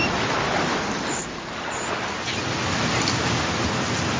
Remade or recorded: recorded